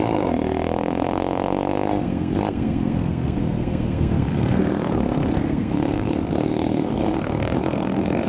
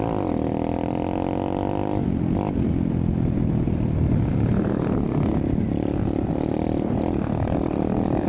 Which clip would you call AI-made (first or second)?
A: first